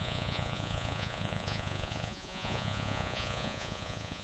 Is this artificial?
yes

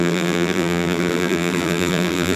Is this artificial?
yes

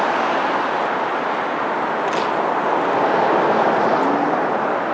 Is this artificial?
no